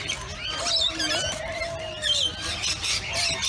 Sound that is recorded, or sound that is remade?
recorded